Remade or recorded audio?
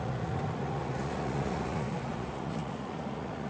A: remade